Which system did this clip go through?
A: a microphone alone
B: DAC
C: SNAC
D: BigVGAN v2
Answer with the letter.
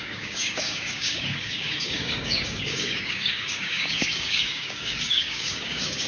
B